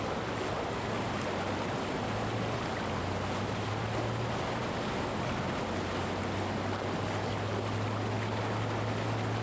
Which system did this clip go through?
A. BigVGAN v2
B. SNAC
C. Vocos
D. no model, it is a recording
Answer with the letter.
D